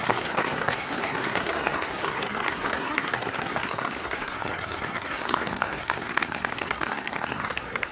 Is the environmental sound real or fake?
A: fake